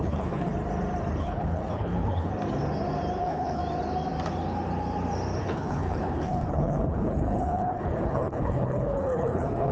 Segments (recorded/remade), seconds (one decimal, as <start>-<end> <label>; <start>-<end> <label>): 0.0-0.5 remade; 0.5-1.2 recorded; 1.2-2.3 remade; 2.3-3.2 recorded; 3.2-3.6 remade; 3.6-5.4 recorded; 5.4-9.7 remade